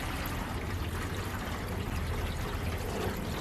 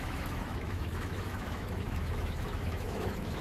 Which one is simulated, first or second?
second